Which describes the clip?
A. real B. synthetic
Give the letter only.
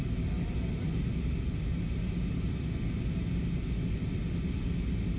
A